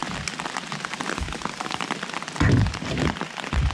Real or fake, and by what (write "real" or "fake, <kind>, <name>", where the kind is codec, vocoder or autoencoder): real